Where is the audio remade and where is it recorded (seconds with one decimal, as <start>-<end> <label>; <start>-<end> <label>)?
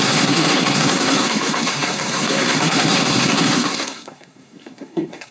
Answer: 0.0-5.3 remade